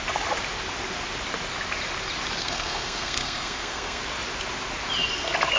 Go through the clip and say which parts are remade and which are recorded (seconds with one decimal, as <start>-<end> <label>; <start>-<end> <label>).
0.0-2.4 recorded; 2.4-4.0 remade; 4.0-5.6 recorded

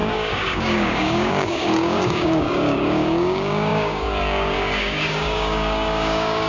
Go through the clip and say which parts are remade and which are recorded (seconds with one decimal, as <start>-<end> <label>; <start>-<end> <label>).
0.0-6.5 remade

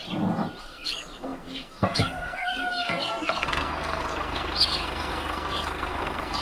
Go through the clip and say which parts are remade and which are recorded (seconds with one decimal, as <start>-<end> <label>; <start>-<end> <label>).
0.0-0.6 recorded; 0.6-6.4 remade

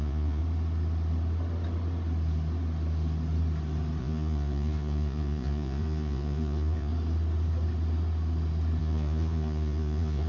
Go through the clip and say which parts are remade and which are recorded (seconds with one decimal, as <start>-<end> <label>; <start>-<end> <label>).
0.0-0.4 remade; 0.4-4.0 recorded; 4.0-6.9 remade; 6.9-8.8 recorded; 8.8-10.3 remade

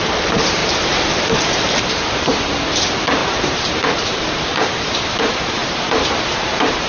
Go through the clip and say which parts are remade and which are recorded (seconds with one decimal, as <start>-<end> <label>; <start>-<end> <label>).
0.0-6.9 remade